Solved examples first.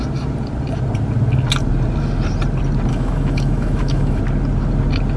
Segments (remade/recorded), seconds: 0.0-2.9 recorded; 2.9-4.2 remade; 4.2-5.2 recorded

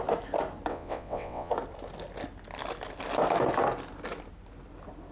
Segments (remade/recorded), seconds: 0.0-0.7 recorded; 0.7-1.5 remade; 1.5-5.1 recorded

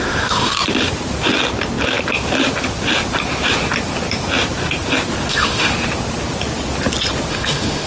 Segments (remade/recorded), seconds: 0.0-0.6 remade; 0.6-5.3 recorded; 5.3-5.7 remade; 5.7-7.3 recorded; 7.3-7.9 remade

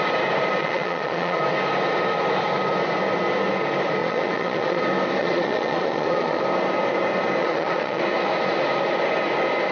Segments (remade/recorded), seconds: 0.0-0.6 recorded; 0.6-1.4 remade; 1.4-4.0 recorded; 4.0-4.8 remade; 4.8-5.2 recorded; 5.2-6.4 remade; 6.4-7.4 recorded; 7.4-8.0 remade; 8.0-9.7 recorded

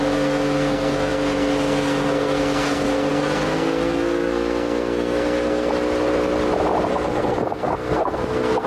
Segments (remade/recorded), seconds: 0.0-5.7 remade; 5.7-6.9 recorded; 6.9-8.7 remade

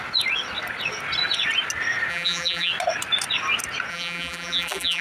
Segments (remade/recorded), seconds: 0.0-2.1 recorded; 2.1-2.7 remade; 2.7-3.9 recorded; 3.9-5.0 remade

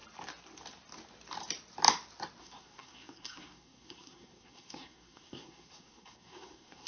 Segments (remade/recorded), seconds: 0.0-2.4 recorded; 2.4-6.9 remade

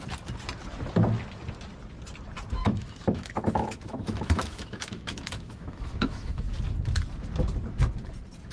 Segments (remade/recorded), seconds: 0.0-2.6 recorded; 2.6-6.4 remade; 6.4-8.5 recorded